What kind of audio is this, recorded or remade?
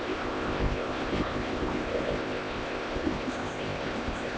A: remade